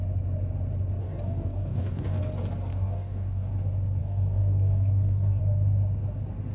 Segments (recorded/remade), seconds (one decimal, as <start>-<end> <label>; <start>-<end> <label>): 0.0-1.0 recorded; 1.0-2.2 remade; 2.2-2.7 recorded; 2.7-3.5 remade; 3.5-4.0 recorded; 4.0-5.4 remade; 5.4-6.5 recorded